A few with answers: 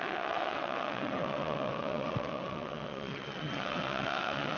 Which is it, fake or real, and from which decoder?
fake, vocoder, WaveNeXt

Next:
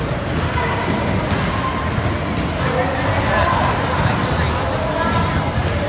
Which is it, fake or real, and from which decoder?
real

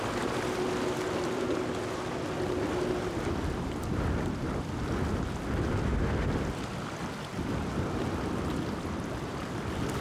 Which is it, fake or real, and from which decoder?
real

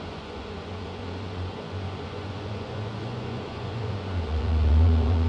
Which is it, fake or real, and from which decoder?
fake, vocoder, Vocos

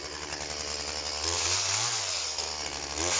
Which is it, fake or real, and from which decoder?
real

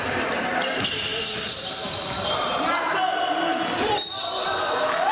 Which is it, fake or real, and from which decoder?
real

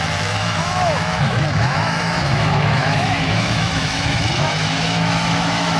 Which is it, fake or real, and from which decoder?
fake, autoencoder, DAC-VAE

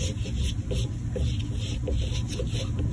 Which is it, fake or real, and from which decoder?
real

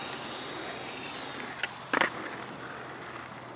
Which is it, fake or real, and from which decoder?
real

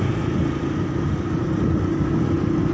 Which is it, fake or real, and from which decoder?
real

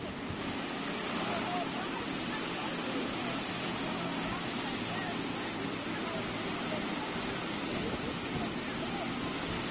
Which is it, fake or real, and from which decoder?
real